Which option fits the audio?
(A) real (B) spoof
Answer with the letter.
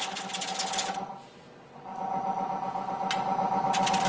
A